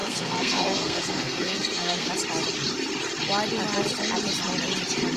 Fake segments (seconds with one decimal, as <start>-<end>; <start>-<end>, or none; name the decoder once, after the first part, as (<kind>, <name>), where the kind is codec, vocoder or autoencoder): 0.0-2.1 (codec, SNAC)